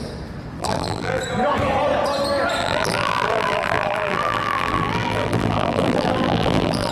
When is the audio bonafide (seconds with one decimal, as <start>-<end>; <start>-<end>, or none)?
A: 0.0-0.6; 1.2-2.6